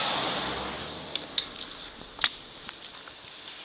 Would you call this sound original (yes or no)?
yes